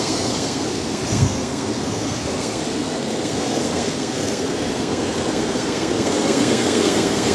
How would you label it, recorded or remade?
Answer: remade